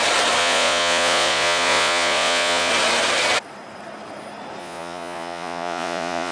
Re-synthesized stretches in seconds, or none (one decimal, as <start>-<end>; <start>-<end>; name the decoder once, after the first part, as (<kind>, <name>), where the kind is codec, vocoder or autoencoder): 0.4-2.7 (vocoder, Vocos); 4.6-6.3